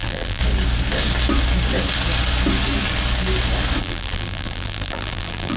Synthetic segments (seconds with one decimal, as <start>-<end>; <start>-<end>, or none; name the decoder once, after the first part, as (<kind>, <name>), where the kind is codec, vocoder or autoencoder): 0.0-0.4 (vocoder, BigVGAN v2); 3.8-5.6